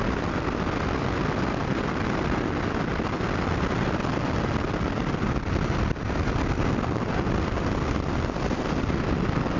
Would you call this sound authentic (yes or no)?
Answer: yes